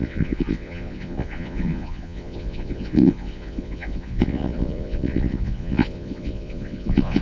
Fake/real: fake